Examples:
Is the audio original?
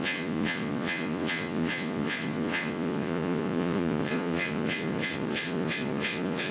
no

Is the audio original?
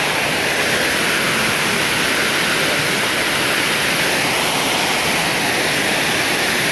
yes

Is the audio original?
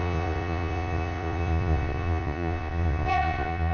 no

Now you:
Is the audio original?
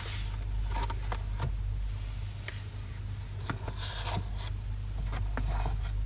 yes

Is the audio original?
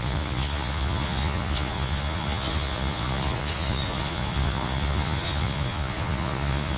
no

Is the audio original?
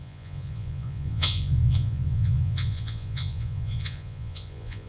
no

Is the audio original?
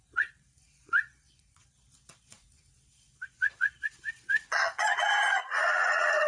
no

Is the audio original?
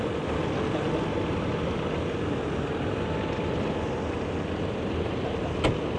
yes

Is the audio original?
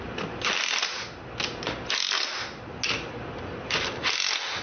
yes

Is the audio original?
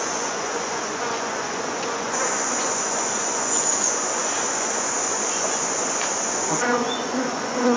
no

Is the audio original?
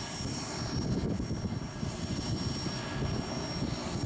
yes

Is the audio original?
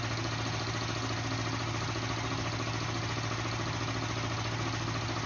yes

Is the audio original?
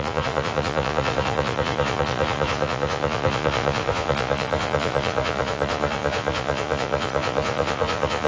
no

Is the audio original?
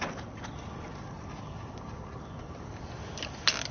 yes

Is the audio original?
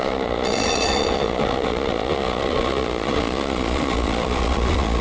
no